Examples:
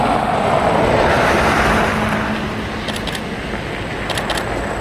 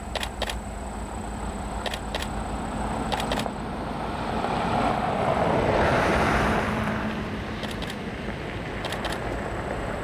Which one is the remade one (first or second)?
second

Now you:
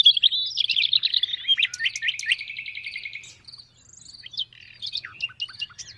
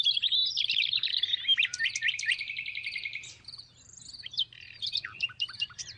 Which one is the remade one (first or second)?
second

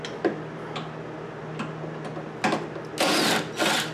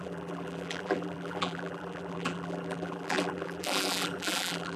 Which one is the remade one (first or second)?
second